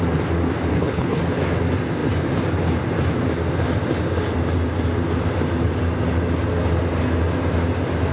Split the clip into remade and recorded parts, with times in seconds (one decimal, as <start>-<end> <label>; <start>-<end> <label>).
0.0-0.7 recorded; 0.7-1.2 remade; 1.2-8.1 recorded

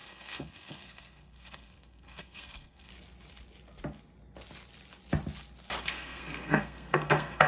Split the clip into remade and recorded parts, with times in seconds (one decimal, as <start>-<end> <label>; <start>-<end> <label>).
0.0-2.9 remade; 2.9-5.8 recorded; 5.8-7.5 remade

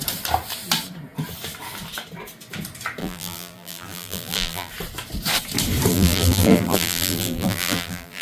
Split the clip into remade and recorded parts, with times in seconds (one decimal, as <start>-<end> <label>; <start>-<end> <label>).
0.0-3.0 recorded; 3.0-4.7 remade; 4.7-5.9 recorded; 5.9-8.2 remade

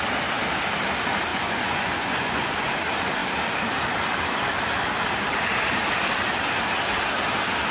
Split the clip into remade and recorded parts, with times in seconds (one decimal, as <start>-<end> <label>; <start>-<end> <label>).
0.0-1.3 recorded; 1.3-2.7 remade; 2.7-7.7 recorded

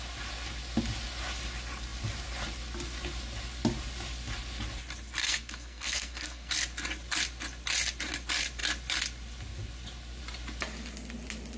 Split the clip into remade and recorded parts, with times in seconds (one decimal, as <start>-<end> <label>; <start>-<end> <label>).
0.0-5.2 recorded; 5.2-6.5 remade; 6.5-11.6 recorded

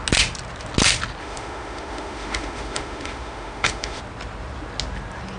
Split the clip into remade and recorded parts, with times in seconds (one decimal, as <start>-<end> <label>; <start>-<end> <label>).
0.0-1.2 recorded; 1.2-4.0 remade; 4.0-5.4 recorded

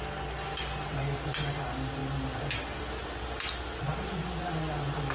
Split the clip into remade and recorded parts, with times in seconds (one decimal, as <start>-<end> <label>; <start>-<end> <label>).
0.0-5.1 recorded

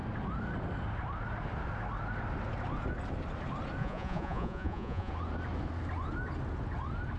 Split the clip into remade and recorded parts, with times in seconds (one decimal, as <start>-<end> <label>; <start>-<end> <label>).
0.0-3.8 recorded; 3.8-5.1 remade; 5.1-7.2 recorded